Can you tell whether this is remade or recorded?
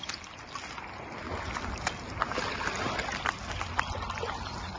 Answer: recorded